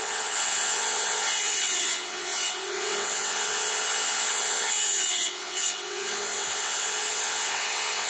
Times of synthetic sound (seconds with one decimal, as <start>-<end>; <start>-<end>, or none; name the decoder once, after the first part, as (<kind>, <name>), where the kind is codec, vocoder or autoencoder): 0.0-8.1 (vocoder, WaveNeXt)